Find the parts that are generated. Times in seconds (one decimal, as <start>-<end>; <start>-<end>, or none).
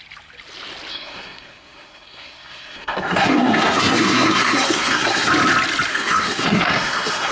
0.9-5.3; 5.9-7.3